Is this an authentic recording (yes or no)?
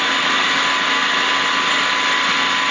yes